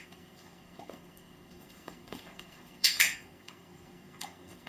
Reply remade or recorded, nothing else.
remade